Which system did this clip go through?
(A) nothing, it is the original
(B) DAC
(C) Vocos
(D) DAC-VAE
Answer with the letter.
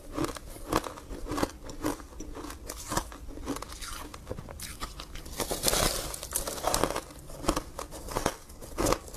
A